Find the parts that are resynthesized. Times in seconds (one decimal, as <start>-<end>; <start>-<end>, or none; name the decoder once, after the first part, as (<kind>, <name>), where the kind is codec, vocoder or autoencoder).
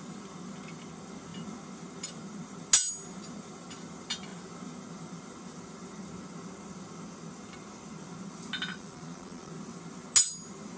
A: 8.7-9.5 (vocoder, Vocos)